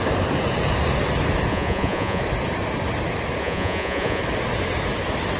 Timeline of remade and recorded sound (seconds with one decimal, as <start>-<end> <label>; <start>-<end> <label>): 0.0-1.5 recorded; 1.5-2.2 remade; 2.2-3.4 recorded; 3.4-4.2 remade; 4.2-5.4 recorded